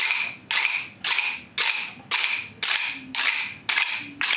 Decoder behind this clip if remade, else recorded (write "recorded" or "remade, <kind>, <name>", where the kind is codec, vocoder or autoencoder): recorded